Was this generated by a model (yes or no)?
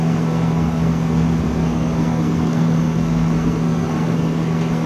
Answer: yes